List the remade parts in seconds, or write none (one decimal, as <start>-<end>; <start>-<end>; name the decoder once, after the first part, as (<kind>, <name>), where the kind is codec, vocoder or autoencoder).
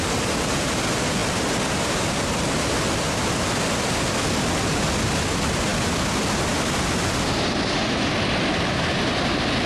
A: none